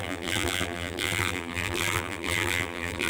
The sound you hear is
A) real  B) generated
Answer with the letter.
B